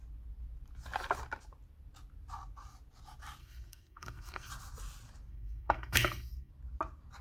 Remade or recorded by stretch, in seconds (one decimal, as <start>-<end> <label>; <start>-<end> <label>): 0.0-3.4 recorded; 3.4-4.5 remade; 4.5-5.3 recorded; 5.3-6.5 remade; 6.5-7.2 recorded